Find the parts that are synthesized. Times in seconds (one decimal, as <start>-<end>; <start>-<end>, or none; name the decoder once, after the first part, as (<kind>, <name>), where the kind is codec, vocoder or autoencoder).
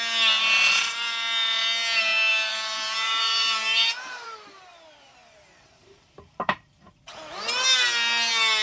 2.3-6.8 (vocoder, BigVGAN v2)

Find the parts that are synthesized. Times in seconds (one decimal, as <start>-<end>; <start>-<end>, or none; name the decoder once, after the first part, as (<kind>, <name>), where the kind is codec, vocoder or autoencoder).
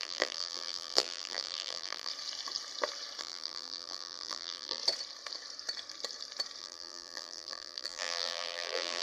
0.0-2.1 (vocoder, BigVGAN v2); 3.2-4.8; 6.6-9.0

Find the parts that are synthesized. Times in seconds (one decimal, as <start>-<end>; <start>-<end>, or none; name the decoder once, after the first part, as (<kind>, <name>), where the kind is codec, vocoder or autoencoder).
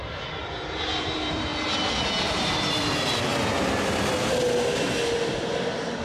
0.0-0.4 (vocoder, BigVGAN v2); 1.0-1.5; 2.2-3.3; 5.3-6.0